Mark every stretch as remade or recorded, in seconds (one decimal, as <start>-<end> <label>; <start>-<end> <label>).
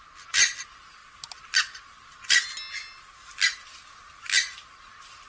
0.0-5.3 recorded